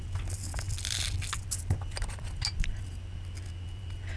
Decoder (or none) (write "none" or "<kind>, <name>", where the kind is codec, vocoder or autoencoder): none